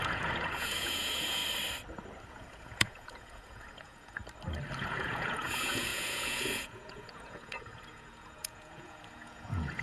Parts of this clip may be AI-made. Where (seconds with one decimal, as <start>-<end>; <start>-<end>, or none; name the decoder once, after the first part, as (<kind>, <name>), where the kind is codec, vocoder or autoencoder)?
0.0-1.4 (vocoder, Vocos); 2.3-4.2; 4.8-9.8